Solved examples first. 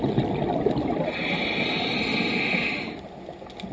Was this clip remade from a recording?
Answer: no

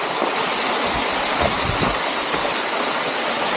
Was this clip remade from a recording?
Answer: no